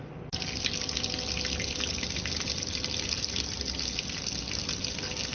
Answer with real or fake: real